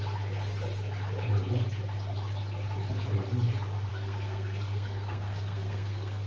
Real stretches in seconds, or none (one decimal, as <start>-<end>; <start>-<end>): 0.0-3.9